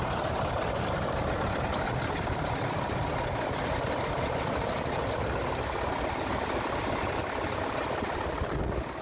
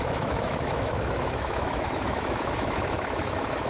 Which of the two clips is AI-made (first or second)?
second